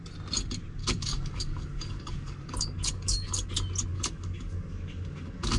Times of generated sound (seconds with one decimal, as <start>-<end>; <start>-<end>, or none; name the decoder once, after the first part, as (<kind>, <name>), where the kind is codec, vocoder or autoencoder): 0.8-3.5 (codec, DAC); 3.9-5.6